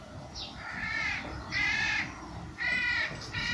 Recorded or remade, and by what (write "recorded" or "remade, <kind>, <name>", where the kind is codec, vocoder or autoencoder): recorded